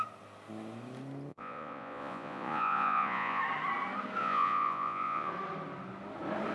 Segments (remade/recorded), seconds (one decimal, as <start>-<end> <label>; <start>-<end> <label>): 0.0-1.3 recorded; 1.3-3.4 remade; 3.4-4.2 recorded; 4.2-5.3 remade; 5.3-6.5 recorded

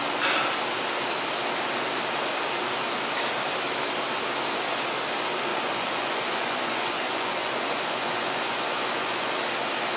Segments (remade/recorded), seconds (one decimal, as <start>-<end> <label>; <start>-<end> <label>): 0.0-5.5 recorded; 5.5-9.3 remade; 9.3-10.0 recorded

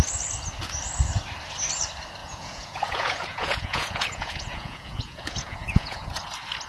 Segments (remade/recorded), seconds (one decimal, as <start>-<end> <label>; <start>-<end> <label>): 0.0-2.2 recorded; 2.2-6.2 remade; 6.2-6.7 recorded

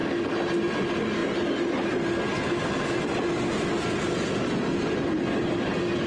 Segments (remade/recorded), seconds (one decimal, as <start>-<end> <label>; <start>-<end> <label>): 0.0-6.1 recorded